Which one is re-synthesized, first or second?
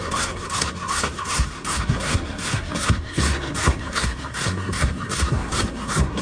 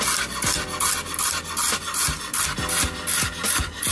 first